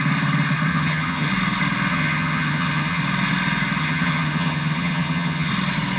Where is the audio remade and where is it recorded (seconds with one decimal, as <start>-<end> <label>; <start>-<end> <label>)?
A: 0.0-0.7 recorded; 0.7-1.3 remade; 1.3-1.9 recorded; 1.9-3.0 remade; 3.0-3.8 recorded; 3.8-5.5 remade; 5.5-6.0 recorded